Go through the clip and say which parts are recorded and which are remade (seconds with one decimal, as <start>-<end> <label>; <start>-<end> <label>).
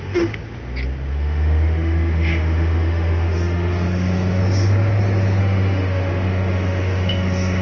0.0-0.4 remade; 0.4-1.1 recorded; 1.1-4.4 remade; 4.4-5.4 recorded; 5.4-7.6 remade